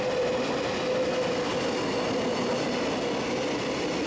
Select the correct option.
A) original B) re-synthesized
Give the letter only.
A